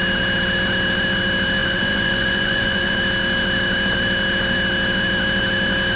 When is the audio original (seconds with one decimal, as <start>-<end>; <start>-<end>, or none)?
0.0-1.6; 2.9-6.0